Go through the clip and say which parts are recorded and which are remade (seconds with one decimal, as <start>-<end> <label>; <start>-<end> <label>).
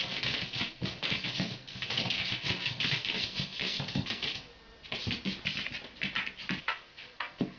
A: 0.0-4.5 remade; 4.5-6.6 recorded; 6.6-7.6 remade